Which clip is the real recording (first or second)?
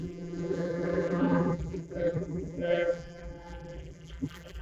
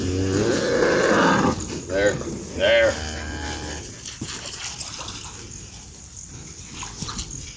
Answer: second